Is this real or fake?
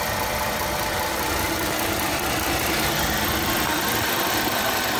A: real